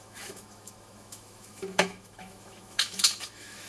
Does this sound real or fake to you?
fake